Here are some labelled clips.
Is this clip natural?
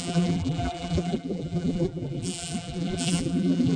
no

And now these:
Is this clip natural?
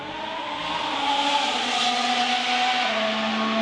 yes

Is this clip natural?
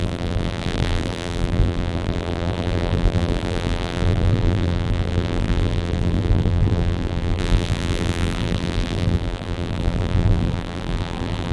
no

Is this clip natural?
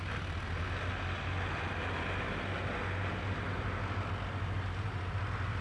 yes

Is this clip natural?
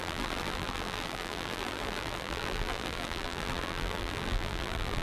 no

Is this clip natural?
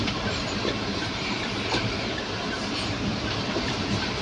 no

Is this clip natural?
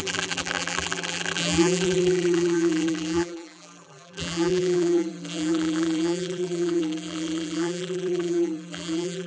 no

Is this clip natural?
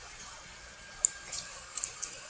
yes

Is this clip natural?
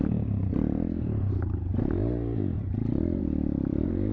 no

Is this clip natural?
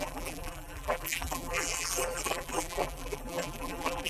no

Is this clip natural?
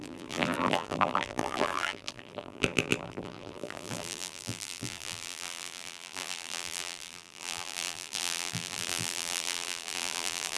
no